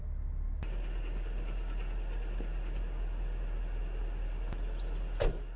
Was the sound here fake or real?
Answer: real